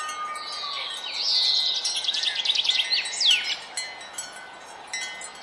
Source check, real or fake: real